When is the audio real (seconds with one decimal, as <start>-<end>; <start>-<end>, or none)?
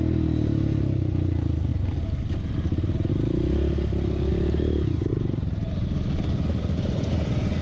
0.0-7.6